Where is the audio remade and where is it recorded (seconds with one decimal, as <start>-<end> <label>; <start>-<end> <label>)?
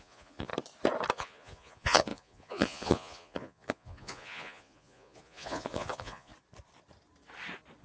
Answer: 0.0-0.5 remade; 0.5-1.1 recorded; 1.1-6.3 remade; 6.3-7.8 recorded